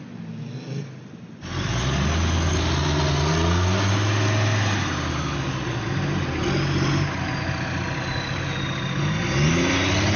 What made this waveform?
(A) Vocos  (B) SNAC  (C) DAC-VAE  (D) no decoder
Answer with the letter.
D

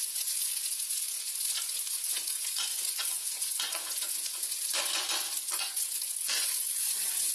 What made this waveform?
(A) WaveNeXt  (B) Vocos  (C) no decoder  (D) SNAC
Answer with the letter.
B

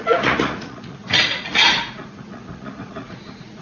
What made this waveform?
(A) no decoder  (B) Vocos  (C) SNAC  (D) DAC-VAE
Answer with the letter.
B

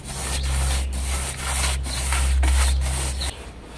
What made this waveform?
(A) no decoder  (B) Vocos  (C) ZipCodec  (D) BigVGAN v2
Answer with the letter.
A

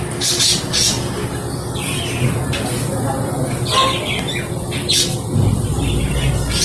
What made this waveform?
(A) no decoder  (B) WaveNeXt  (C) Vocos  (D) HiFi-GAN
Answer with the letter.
A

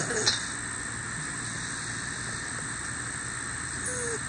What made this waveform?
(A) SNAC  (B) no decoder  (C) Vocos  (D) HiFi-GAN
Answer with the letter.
B